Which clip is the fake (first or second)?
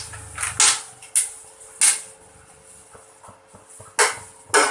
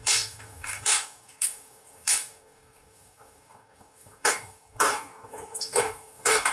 second